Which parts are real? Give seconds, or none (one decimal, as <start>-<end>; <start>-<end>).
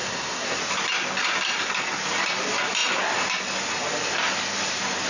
0.6-5.1